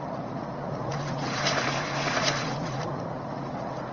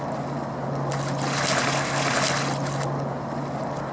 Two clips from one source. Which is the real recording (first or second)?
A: second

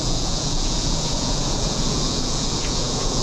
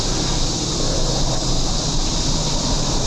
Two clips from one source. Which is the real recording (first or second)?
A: second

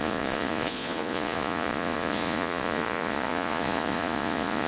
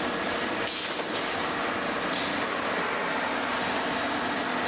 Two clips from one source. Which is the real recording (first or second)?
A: second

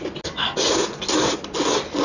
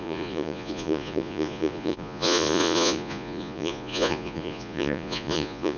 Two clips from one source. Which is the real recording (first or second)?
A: first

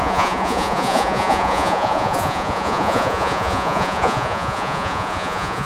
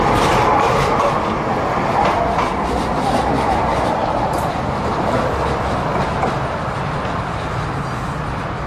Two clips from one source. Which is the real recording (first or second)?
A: second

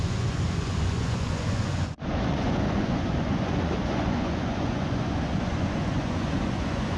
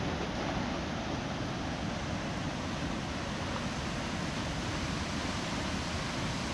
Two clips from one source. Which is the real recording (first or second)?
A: second